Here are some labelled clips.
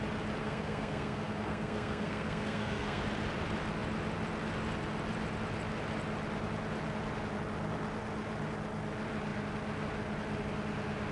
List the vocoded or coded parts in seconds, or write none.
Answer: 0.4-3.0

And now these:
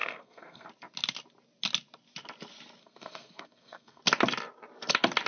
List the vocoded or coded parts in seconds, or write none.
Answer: 0.0-0.7; 2.8-4.0